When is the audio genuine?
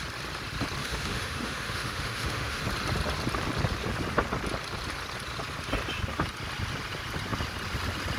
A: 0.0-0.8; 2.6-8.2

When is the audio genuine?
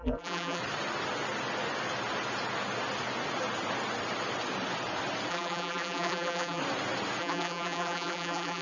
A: 0.6-5.3; 6.6-7.2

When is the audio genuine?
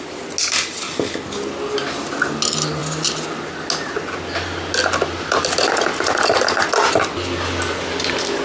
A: 0.0-8.4